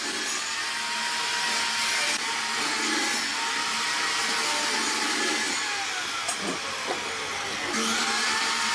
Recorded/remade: recorded